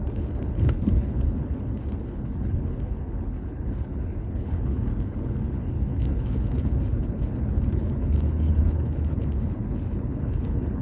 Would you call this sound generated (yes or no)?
yes